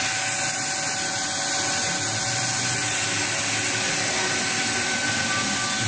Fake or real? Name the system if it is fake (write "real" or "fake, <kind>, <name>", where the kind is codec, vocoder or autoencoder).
real